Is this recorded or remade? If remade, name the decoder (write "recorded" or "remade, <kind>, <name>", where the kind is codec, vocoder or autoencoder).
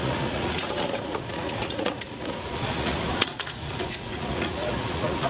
remade, vocoder, Vocos